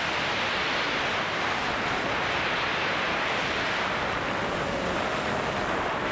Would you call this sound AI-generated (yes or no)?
no